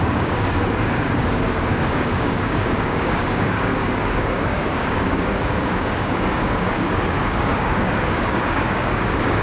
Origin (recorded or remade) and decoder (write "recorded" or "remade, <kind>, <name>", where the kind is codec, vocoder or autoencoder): remade, codec, DAC